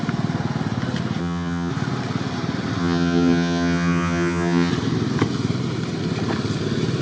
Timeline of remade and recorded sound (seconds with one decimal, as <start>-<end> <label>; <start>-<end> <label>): 0.0-1.2 recorded; 1.2-1.7 remade; 1.7-2.8 recorded; 2.8-4.7 remade; 4.7-7.0 recorded